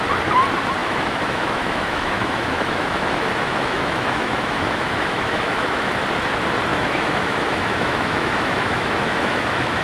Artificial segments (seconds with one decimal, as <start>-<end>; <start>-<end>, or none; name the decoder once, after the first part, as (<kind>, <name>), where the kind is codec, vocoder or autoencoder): 0.8-5.9 (autoencoder, DAC-VAE); 6.7-9.8

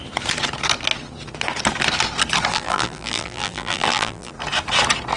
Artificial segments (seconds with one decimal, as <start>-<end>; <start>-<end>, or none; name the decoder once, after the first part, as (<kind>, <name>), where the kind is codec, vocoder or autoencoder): 2.5-4.3 (vocoder, BigVGAN v2)

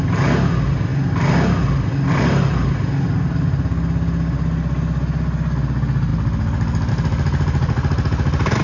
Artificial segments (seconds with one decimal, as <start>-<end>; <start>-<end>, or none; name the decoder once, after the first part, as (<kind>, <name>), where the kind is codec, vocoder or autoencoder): none

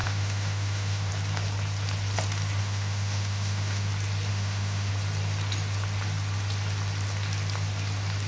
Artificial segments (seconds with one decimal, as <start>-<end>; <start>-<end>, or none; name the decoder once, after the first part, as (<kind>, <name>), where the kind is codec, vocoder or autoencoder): 0.0-1.1 (autoencoder, DAC-VAE); 2.6-3.9; 4.3-4.9

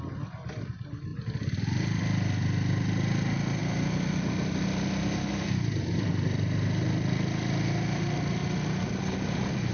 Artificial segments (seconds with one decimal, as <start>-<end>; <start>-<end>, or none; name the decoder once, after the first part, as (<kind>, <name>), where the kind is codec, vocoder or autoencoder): none

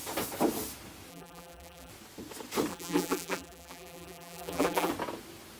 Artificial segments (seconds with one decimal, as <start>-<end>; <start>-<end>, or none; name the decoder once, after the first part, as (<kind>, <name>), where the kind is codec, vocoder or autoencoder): 1.1-1.9 (vocoder, BigVGAN v2); 2.7-4.9

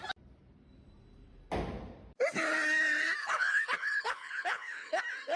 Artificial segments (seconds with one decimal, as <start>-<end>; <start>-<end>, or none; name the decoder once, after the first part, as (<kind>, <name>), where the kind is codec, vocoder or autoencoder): 3.2-5.0 (codec, HILCodec)